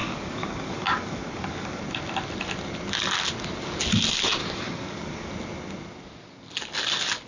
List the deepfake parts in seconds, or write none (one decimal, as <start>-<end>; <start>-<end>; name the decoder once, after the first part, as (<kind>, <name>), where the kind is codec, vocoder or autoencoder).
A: 0.0-1.8 (codec, DAC); 4.4-5.3